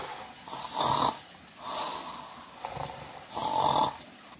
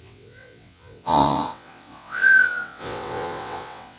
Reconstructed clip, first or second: second